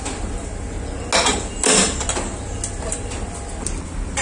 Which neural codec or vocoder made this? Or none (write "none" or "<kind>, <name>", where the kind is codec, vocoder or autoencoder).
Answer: none